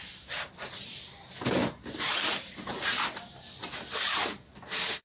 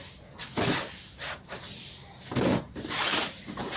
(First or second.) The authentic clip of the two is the first